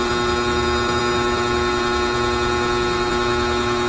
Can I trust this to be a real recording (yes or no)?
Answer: yes